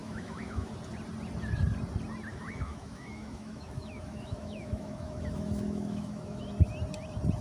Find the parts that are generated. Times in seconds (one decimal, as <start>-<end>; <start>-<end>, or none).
0.0-0.7; 2.3-6.5